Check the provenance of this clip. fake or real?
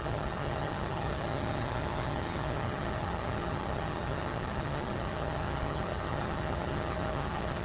fake